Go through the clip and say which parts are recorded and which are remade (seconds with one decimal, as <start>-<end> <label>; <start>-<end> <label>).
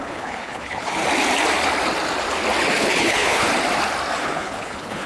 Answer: 0.0-1.0 remade; 1.0-2.8 recorded; 2.8-3.5 remade; 3.5-4.2 recorded; 4.2-5.1 remade